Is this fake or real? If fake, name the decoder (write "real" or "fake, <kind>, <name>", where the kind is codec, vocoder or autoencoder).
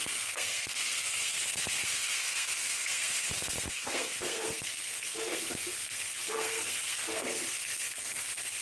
fake, codec, SNAC